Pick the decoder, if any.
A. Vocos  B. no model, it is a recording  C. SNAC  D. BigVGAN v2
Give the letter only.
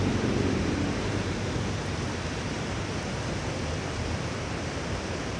B